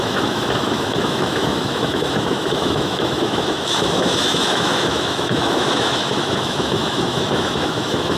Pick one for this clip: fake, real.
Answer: fake